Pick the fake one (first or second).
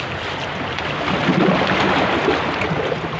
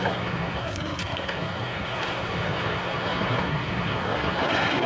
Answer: second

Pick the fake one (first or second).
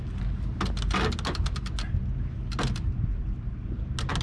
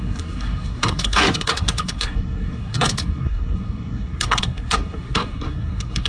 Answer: second